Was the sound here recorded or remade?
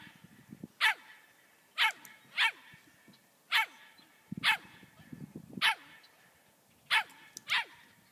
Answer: recorded